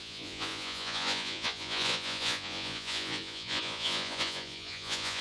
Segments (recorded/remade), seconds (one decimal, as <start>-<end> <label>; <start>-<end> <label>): 0.0-5.2 remade